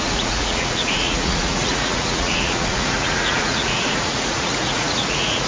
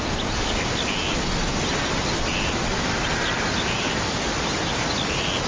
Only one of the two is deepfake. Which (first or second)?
first